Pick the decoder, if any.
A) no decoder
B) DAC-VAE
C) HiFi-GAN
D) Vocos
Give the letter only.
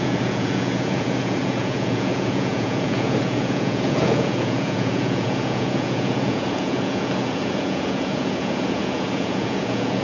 D